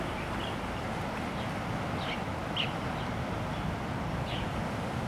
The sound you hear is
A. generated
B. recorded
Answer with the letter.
B